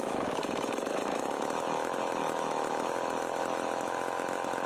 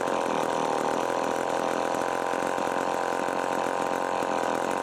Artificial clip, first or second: first